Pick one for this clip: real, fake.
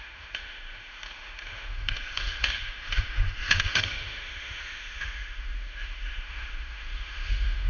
fake